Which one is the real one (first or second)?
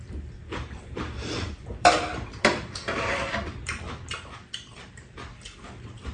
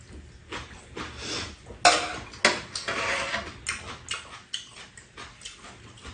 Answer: second